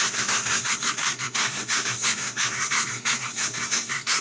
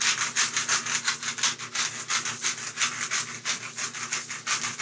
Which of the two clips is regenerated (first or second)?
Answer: first